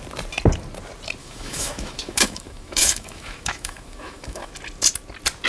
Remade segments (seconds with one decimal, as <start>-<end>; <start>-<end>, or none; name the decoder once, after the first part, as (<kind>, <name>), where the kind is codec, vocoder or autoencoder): 1.2-4.5 (autoencoder, DAC-VAE)